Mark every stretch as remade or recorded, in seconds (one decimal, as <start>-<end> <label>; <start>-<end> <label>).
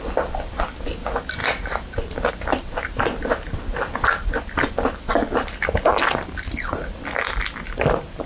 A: 0.0-8.3 recorded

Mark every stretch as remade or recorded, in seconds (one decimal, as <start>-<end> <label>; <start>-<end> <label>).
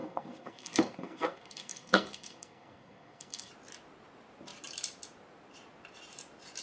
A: 0.0-3.5 remade; 3.5-6.6 recorded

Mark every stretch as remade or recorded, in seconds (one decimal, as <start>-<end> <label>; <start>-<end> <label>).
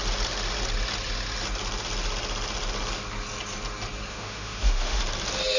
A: 0.0-4.1 recorded; 4.1-5.0 remade; 5.0-5.6 recorded